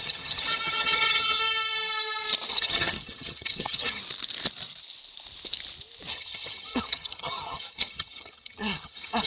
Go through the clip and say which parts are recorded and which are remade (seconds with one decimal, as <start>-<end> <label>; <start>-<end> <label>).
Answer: 0.0-1.4 remade; 1.4-2.5 recorded; 2.5-4.0 remade; 4.0-6.1 recorded; 6.1-9.3 remade